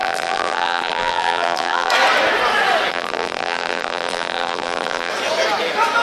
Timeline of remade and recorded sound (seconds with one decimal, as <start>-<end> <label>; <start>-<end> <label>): 0.0-1.9 remade; 1.9-2.9 recorded; 2.9-5.1 remade; 5.1-6.0 recorded